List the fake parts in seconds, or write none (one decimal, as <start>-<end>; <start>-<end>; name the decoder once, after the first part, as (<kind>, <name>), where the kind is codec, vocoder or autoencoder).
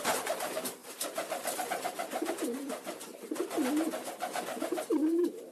0.0-3.1 (vocoder, BigVGAN v2); 4.6-5.5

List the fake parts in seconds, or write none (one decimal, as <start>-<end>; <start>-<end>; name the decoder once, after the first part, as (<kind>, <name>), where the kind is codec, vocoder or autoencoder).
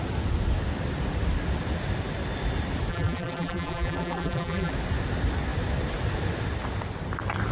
2.9-4.7 (vocoder, BigVGAN v2)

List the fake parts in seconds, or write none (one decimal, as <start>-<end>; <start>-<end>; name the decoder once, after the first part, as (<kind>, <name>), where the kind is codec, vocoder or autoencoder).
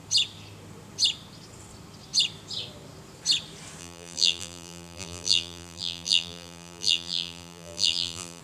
3.8-8.4 (vocoder, BigVGAN v2)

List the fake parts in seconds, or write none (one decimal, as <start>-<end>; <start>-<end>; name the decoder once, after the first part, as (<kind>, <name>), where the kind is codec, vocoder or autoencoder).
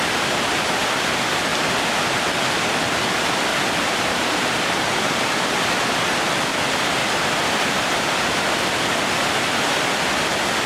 3.5-6.4 (vocoder, BigVGAN v2); 7.0-7.9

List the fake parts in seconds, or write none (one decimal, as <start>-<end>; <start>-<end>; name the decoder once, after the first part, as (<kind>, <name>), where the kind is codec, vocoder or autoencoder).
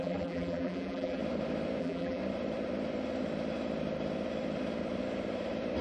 0.0-1.2 (vocoder, BigVGAN v2); 1.8-2.2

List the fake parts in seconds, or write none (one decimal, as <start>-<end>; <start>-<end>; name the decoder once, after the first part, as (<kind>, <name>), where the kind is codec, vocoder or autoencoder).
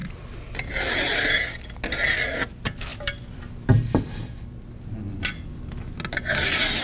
0.0-0.7 (vocoder, BigVGAN v2); 2.9-4.0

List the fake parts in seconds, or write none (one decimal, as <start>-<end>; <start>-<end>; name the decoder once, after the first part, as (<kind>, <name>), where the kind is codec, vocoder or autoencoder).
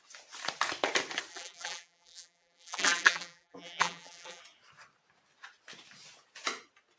1.3-4.4 (vocoder, BigVGAN v2)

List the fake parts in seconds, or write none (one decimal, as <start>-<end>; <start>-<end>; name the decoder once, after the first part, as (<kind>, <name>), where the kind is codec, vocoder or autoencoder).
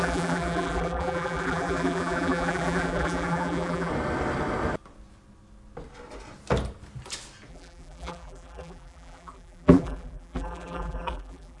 0.0-3.9 (vocoder, BigVGAN v2); 7.5-11.6